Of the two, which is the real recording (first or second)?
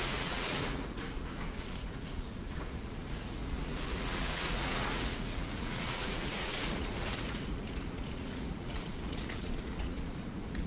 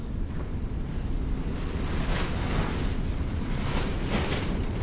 second